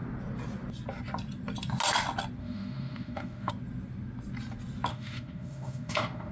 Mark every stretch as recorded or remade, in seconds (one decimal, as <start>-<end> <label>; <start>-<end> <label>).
0.0-2.4 recorded; 2.4-3.5 remade; 3.5-4.9 recorded; 4.9-6.3 remade